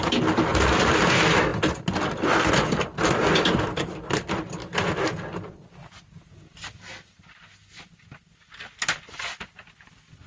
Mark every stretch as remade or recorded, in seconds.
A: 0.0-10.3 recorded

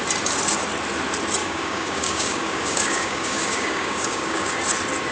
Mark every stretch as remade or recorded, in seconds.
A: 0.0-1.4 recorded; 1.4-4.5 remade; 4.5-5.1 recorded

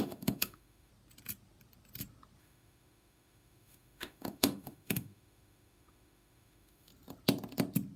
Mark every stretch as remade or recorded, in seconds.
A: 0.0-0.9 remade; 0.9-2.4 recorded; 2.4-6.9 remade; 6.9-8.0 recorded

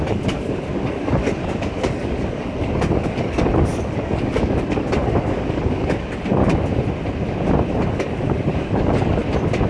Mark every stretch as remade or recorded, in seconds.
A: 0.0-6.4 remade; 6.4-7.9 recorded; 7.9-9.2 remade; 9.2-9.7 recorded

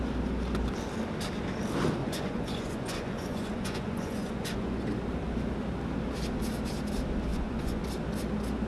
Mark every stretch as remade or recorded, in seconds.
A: 0.0-2.0 recorded; 2.0-4.8 remade; 4.8-7.3 recorded; 7.3-7.8 remade; 7.8-8.7 recorded

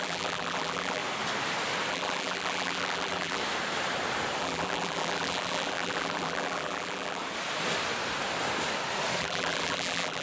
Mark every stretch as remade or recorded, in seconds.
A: 0.0-1.0 remade; 1.0-1.9 recorded; 1.9-3.4 remade; 3.4-4.4 recorded; 4.4-7.2 remade; 7.2-9.2 recorded; 9.2-10.2 remade

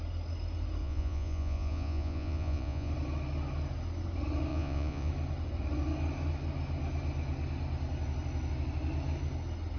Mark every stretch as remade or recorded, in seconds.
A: 0.0-0.8 recorded; 0.8-2.9 remade; 2.9-4.5 recorded; 4.5-5.1 remade; 5.1-9.8 recorded